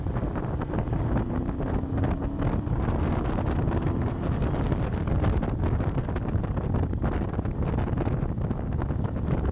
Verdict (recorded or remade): recorded